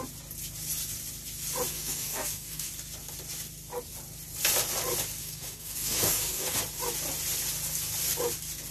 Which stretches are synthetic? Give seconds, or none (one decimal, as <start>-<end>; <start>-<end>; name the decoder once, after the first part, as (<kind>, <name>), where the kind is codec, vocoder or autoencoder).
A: 1.7-2.7 (codec, DAC); 5.2-6.6

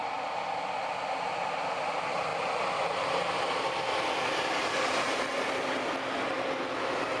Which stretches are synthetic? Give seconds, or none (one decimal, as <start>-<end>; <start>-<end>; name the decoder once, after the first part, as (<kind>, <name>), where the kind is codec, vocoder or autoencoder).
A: none